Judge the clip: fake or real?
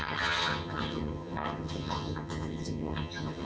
fake